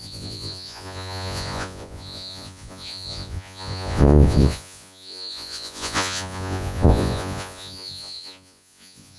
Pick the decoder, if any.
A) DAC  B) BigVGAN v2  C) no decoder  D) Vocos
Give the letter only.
D